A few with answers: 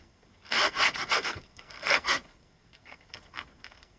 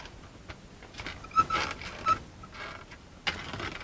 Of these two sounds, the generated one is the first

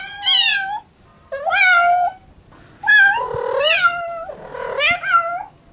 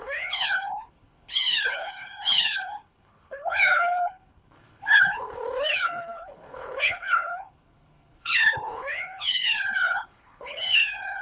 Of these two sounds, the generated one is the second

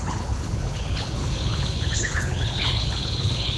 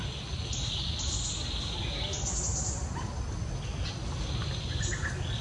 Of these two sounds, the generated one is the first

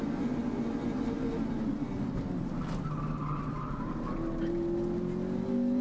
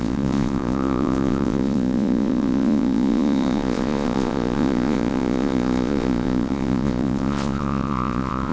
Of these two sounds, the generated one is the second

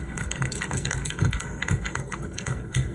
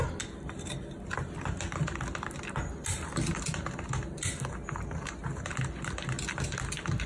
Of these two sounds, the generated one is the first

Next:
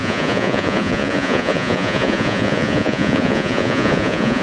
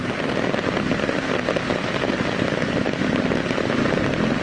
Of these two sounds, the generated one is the first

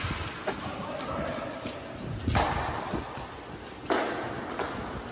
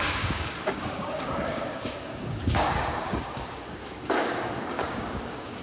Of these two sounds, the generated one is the second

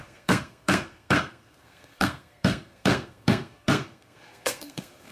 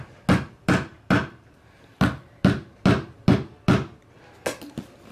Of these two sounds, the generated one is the first